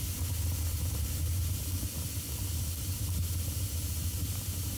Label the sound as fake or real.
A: real